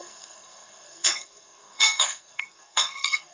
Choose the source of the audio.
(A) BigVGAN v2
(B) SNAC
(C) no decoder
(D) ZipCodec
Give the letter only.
B